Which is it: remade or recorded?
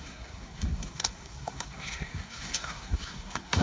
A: remade